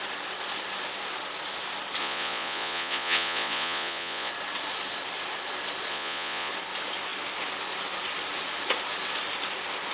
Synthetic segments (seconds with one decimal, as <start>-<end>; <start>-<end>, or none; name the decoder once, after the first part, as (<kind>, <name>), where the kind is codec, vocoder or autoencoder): 2.0-4.3 (vocoder, Vocos); 5.9-6.5